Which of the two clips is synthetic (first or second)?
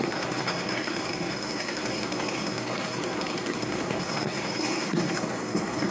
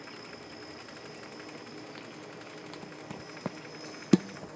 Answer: first